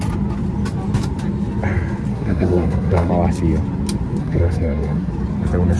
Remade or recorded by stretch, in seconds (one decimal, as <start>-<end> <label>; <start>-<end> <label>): 0.0-2.1 recorded; 2.1-3.1 remade; 3.1-4.2 recorded; 4.2-5.1 remade; 5.1-5.8 recorded